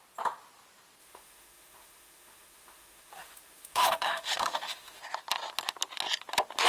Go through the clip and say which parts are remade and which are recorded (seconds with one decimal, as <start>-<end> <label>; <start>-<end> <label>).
0.0-1.0 recorded; 1.0-5.0 remade; 5.0-6.7 recorded